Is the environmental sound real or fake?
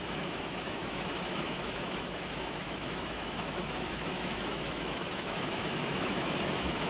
fake